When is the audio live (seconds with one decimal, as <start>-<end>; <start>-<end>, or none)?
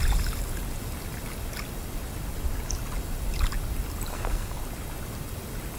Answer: 0.0-4.1; 4.6-5.8